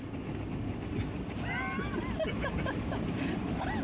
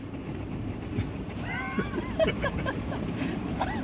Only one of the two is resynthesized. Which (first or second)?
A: second